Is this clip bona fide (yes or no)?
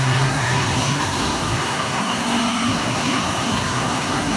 no